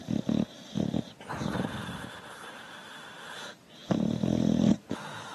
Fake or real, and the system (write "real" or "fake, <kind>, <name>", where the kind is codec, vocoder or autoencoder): real